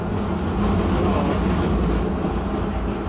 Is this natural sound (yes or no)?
yes